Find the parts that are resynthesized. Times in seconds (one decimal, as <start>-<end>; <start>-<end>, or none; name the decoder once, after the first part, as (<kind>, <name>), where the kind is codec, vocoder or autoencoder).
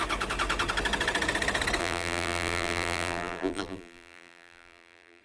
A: 1.8-5.2 (vocoder, BigVGAN v2)